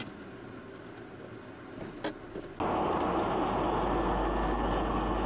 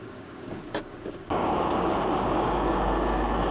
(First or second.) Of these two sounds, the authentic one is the first